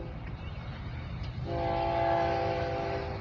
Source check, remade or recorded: recorded